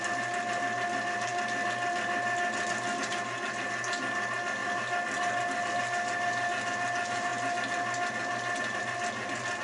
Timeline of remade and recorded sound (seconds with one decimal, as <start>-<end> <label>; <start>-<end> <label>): 0.0-9.6 recorded